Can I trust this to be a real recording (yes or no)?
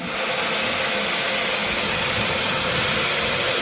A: yes